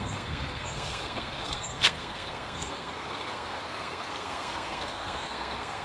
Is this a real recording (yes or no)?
no